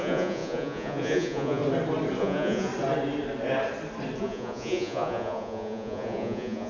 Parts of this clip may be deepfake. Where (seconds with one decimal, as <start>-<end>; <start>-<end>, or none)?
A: 0.0-1.6; 2.2-2.7; 4.2-6.7

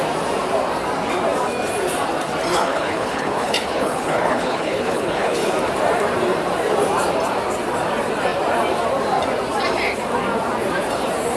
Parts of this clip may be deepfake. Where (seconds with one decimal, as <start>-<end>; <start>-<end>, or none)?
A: 2.5-5.5

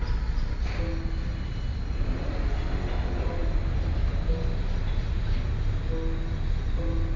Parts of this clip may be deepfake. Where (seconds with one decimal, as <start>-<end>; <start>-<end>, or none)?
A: none